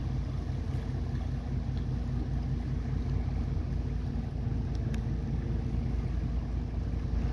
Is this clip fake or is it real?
real